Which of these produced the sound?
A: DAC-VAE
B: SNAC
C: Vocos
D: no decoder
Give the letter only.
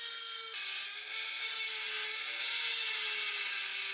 D